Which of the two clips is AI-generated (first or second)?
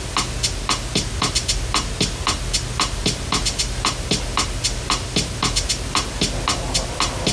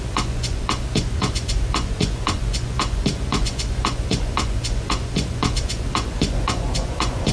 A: second